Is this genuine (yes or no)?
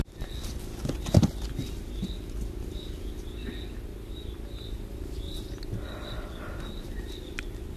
yes